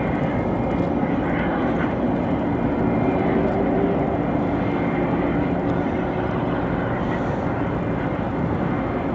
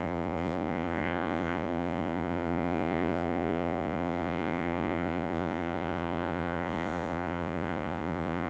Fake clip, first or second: second